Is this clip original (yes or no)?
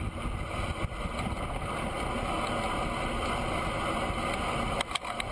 yes